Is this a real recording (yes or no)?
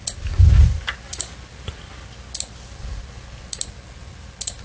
yes